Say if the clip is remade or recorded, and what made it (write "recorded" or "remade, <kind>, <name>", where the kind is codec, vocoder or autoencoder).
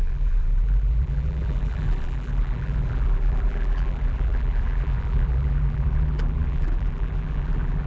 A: remade, vocoder, BigVGAN v2